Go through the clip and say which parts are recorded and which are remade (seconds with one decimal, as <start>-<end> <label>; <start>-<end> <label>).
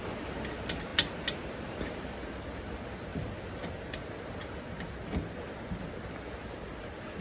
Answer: 0.0-7.2 recorded